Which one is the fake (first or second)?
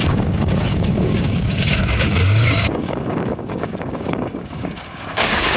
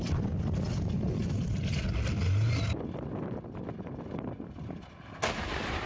first